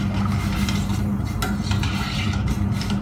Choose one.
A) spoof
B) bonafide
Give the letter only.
B